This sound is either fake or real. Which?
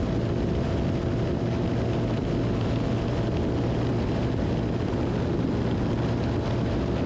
real